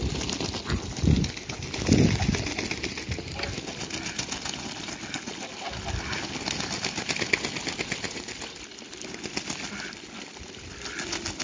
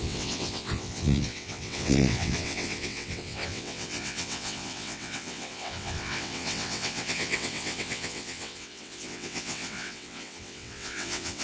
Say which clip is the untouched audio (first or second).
first